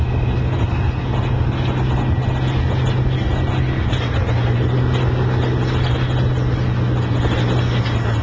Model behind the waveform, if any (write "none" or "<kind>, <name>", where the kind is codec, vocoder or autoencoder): none